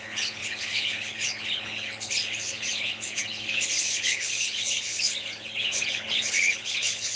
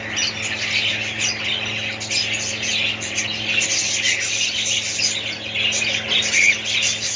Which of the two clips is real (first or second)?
second